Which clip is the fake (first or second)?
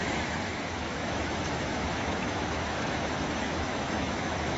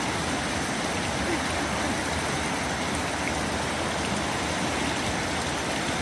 first